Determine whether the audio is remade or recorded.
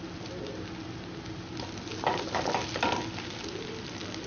recorded